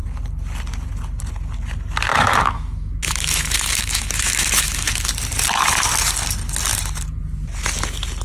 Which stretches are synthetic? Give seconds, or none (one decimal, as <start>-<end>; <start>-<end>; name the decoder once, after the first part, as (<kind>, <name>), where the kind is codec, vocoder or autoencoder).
2.1-5.1 (autoencoder, DAC-VAE)

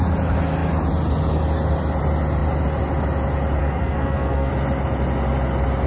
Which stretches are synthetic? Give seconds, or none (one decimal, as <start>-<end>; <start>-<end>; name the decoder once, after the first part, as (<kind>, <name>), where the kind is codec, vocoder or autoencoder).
3.6-4.5 (codec, SNAC)

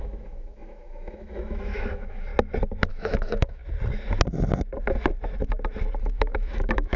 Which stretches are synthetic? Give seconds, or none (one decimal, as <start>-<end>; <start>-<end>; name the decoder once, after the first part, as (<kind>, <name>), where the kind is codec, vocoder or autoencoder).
0.0-2.3 (autoencoder, DAC-VAE); 2.9-3.6; 6.0-7.0

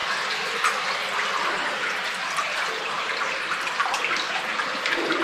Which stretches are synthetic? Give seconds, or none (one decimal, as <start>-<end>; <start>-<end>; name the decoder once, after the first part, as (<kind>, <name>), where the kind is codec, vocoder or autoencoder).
2.2-2.9 (vocoder, BigVGAN v2)

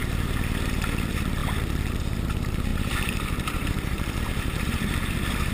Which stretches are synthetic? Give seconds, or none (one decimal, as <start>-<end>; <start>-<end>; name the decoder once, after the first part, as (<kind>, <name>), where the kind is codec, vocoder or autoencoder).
0.0-1.4 (vocoder, BigVGAN v2); 1.9-5.5

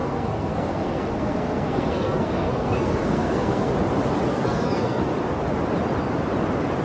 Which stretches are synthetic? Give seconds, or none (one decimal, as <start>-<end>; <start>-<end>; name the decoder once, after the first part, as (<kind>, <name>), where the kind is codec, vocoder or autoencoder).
0.0-3.7 (codec, SNAC); 4.3-5.1

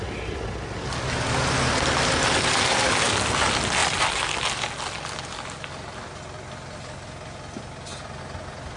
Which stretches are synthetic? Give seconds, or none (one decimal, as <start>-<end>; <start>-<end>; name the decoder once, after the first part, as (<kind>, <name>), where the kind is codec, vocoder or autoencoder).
none

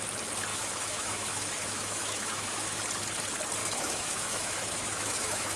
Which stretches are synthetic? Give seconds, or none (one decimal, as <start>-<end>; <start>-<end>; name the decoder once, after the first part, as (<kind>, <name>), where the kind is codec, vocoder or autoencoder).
0.5-2.8 (autoencoder, DAC-VAE); 3.6-5.6